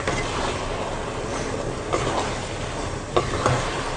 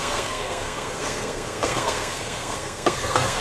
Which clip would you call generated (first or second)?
second